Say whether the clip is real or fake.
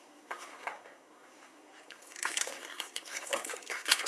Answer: fake